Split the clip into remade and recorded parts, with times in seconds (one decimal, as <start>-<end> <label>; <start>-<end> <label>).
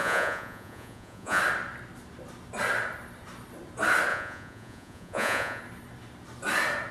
0.0-1.4 remade; 1.4-4.1 recorded; 4.1-5.6 remade; 5.6-6.9 recorded